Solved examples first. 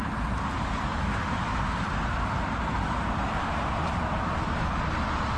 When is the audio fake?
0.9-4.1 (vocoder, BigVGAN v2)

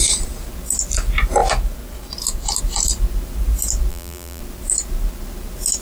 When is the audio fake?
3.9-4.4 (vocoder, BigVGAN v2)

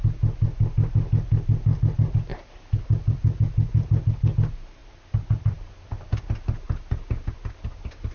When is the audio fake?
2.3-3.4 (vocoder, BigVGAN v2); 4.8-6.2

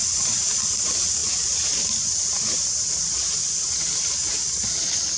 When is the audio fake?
none